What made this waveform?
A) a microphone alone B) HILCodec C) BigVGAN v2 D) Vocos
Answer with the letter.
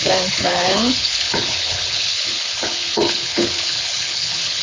B